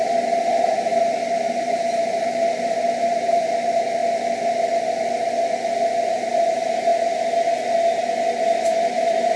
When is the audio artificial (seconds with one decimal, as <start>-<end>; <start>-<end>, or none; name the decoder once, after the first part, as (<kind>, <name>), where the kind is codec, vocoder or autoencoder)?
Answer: 0.0-0.9 (vocoder, BigVGAN v2); 1.5-4.0; 6.1-6.9; 8.6-9.4